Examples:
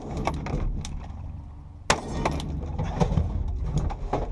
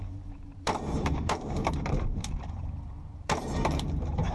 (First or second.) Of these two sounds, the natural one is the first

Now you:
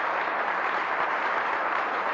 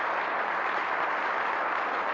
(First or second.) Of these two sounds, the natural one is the second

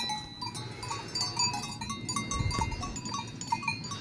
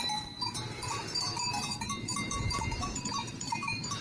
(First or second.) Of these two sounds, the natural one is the first